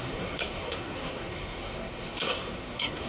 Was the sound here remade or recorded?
remade